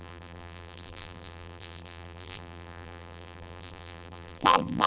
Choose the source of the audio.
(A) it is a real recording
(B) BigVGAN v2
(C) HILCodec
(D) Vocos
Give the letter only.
B